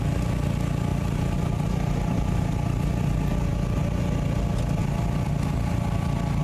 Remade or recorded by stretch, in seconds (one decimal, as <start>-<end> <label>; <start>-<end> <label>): 0.0-0.9 recorded; 0.9-2.5 remade; 2.5-6.4 recorded